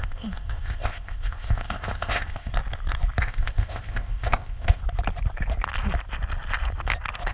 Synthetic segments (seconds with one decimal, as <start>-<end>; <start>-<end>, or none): 0.0-2.5; 3.2-4.8